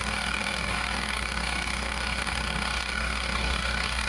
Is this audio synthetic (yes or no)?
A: yes